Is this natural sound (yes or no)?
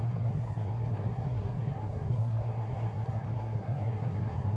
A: no